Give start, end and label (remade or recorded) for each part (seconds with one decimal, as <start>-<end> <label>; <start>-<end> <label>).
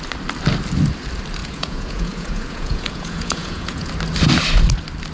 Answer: 0.0-1.4 recorded; 1.4-3.9 remade; 3.9-5.1 recorded